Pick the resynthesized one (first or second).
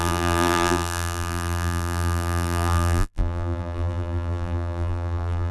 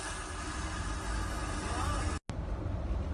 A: first